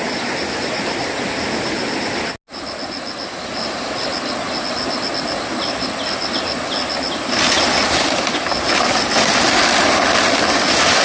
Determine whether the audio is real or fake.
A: real